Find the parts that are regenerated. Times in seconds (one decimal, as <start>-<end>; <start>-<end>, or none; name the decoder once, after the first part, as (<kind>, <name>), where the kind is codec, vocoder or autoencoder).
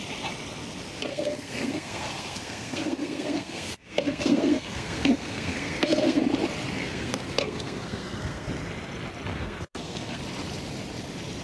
1.1-6.2 (codec, SNAC); 6.8-8.5; 9.3-10.2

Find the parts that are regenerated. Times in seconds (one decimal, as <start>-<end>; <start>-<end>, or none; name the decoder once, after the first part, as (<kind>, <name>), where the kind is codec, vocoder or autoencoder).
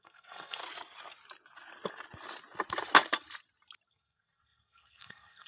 0.0-0.6 (codec, SNAC); 3.9-5.5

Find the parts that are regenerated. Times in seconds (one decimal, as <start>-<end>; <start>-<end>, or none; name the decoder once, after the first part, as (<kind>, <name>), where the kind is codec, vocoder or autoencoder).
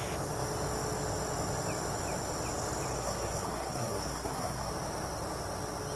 2.9-4.7 (codec, SNAC)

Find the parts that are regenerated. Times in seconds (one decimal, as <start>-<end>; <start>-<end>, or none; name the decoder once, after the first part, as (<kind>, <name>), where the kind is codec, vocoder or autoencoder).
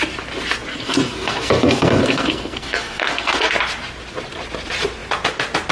0.7-3.5 (codec, SNAC)